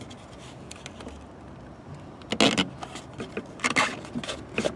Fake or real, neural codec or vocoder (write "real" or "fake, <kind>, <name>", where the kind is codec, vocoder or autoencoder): real